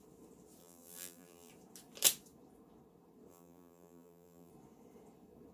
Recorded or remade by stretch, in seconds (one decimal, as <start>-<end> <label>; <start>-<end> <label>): 0.0-0.6 recorded; 0.6-1.5 remade; 1.5-3.3 recorded; 3.3-4.5 remade; 4.5-5.5 recorded